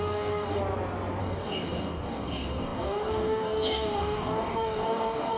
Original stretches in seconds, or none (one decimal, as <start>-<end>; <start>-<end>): 0.6-1.2